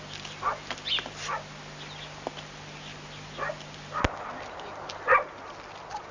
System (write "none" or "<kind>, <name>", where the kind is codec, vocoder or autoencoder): none